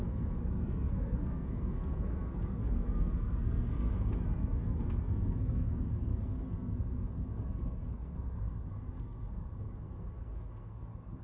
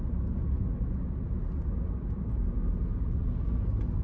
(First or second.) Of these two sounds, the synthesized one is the first